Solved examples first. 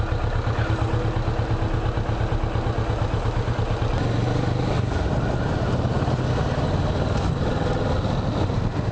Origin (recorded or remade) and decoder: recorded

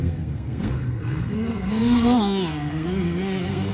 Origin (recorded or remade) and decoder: remade, codec, SNAC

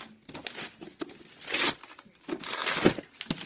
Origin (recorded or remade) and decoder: recorded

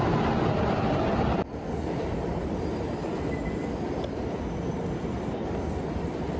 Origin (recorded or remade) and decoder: remade, vocoder, BigVGAN v2